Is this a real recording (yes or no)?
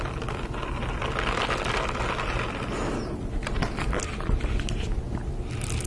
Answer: yes